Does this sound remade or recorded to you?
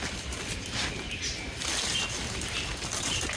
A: recorded